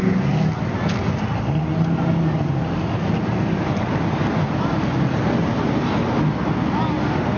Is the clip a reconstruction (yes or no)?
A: no